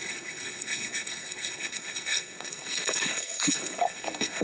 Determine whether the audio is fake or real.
fake